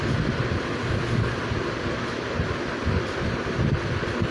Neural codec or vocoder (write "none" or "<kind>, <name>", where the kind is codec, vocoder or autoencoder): none